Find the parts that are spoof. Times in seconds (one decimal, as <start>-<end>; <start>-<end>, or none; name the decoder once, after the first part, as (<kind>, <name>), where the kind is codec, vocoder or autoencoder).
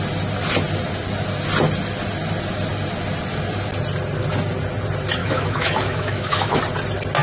5.2-6.6 (autoencoder, DAC-VAE)